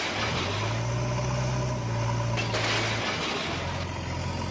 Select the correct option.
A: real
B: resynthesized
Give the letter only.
A